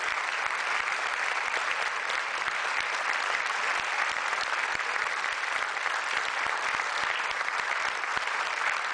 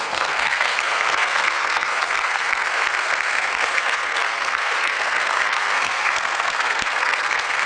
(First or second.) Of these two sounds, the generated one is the second